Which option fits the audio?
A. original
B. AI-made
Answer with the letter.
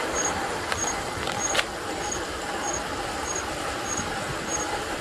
A